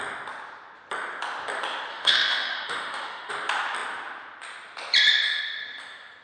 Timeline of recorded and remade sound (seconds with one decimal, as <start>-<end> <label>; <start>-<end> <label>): 0.0-1.9 recorded; 1.9-3.3 remade; 3.3-6.2 recorded